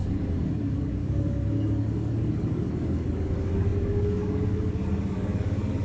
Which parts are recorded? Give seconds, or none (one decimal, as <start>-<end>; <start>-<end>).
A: none